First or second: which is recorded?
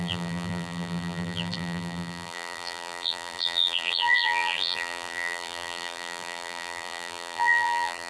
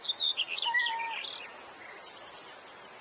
second